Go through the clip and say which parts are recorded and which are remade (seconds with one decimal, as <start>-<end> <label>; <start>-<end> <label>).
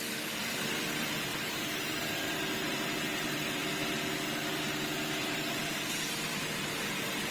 0.0-3.6 remade; 3.6-5.2 recorded; 5.2-7.3 remade